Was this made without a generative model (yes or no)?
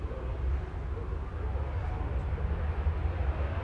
yes